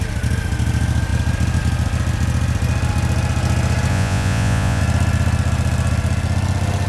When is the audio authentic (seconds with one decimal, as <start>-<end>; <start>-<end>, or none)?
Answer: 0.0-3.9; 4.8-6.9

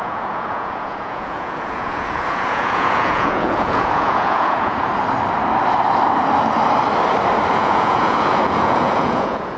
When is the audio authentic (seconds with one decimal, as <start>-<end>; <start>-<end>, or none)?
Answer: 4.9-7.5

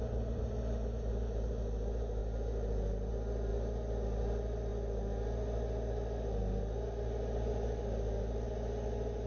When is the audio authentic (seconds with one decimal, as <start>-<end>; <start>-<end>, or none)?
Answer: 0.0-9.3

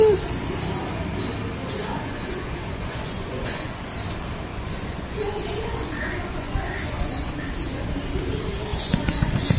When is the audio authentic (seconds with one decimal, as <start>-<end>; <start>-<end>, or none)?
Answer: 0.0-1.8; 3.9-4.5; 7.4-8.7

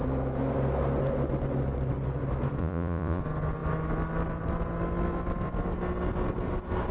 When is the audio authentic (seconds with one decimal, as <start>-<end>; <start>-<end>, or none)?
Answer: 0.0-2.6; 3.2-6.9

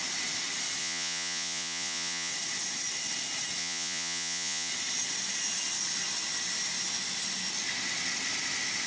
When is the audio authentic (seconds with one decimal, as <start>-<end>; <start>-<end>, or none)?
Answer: 0.0-0.8; 2.3-3.6; 4.7-8.9